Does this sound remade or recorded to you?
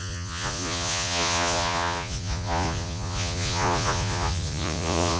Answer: remade